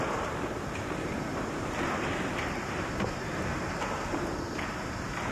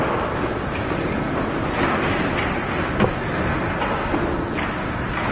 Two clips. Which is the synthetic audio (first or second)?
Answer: first